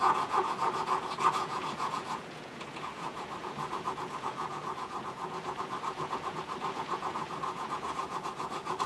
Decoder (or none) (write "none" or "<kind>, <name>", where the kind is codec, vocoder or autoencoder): vocoder, Vocos